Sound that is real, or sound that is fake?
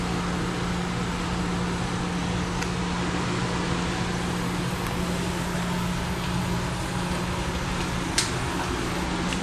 real